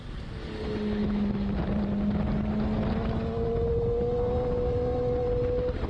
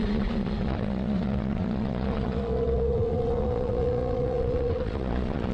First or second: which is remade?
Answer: second